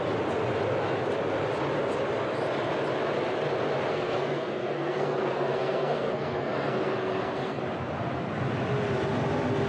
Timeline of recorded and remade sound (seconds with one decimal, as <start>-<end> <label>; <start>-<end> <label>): 0.0-3.9 recorded; 3.9-7.6 remade; 7.6-9.7 recorded